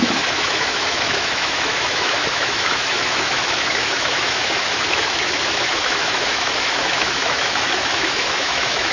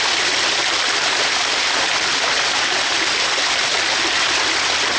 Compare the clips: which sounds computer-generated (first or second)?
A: first